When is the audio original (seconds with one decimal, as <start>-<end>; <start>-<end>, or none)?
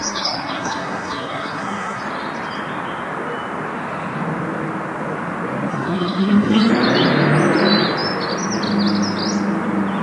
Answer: 2.0-5.7; 6.7-10.0